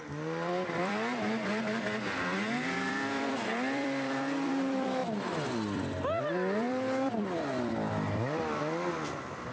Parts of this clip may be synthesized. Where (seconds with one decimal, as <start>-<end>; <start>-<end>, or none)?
0.0-5.0; 5.9-9.5